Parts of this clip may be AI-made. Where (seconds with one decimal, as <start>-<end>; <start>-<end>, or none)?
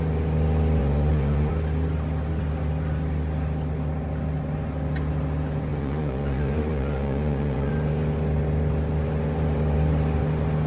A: 0.8-1.5; 5.7-7.7